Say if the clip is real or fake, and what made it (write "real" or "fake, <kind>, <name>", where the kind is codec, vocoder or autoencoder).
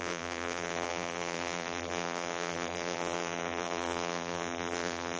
fake, vocoder, BigVGAN v2